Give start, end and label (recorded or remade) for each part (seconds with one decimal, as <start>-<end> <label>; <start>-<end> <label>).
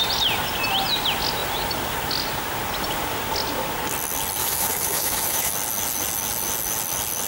0.0-4.4 recorded; 4.4-5.5 remade; 5.5-7.3 recorded